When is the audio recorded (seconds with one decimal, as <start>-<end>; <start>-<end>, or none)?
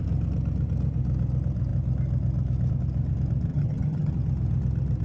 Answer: 0.0-3.5; 4.1-5.0